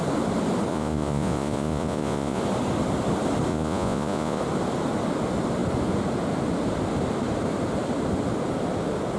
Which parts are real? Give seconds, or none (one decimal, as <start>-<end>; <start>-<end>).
0.0-0.7; 2.4-3.5; 4.4-9.2